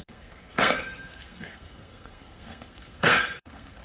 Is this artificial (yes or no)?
yes